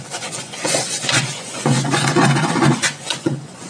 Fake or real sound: fake